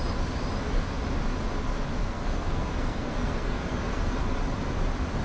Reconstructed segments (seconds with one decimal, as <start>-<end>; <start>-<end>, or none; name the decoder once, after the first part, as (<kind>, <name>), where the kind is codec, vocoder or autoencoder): 2.0-4.2 (codec, SNAC)